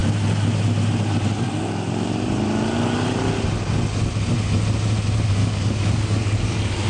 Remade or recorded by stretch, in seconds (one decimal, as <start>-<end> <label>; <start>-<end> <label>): 0.0-5.4 recorded; 5.4-6.9 remade